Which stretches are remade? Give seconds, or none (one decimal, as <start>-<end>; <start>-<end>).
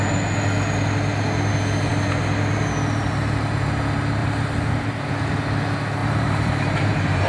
4.2-5.1; 6.0-7.3